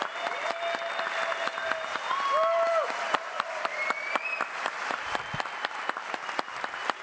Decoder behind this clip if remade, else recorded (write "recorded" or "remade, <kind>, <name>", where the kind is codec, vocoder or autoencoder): recorded